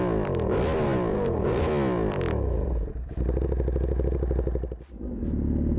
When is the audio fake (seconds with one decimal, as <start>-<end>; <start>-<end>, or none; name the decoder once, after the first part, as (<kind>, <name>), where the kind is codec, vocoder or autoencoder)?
1.1-1.7 (codec, DAC)